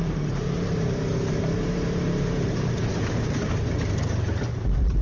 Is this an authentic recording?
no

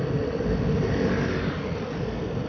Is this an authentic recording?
yes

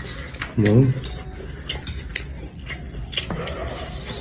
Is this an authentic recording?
yes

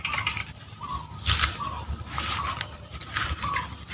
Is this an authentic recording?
no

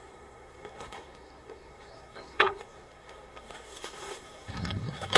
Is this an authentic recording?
no